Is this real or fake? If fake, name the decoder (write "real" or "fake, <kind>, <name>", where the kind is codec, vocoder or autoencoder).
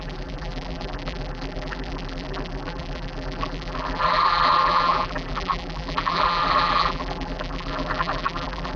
fake, vocoder, BigVGAN v2